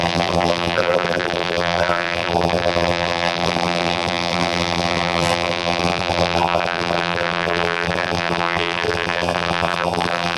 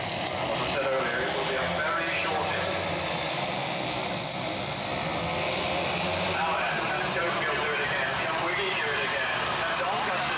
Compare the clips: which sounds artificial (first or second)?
first